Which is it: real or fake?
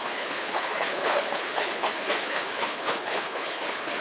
fake